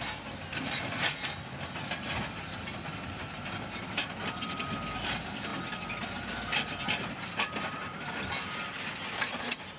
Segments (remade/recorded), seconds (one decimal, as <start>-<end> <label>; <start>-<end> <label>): 0.0-9.8 recorded